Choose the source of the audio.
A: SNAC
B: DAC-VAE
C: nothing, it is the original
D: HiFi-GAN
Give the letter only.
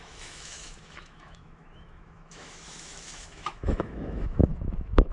B